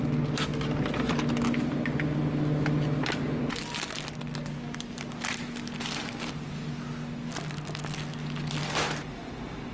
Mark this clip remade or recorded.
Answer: recorded